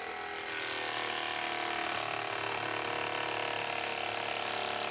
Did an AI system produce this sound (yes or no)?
no